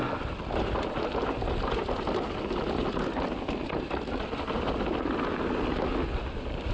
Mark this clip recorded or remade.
recorded